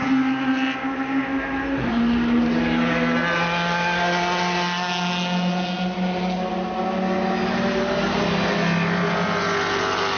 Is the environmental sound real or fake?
real